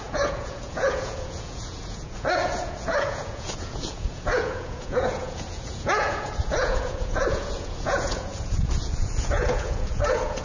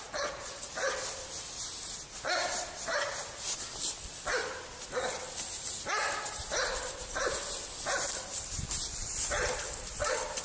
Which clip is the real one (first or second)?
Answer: second